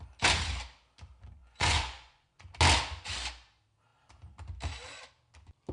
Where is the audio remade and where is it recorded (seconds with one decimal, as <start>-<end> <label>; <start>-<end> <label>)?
0.0-1.4 recorded; 1.4-2.5 remade; 2.5-5.7 recorded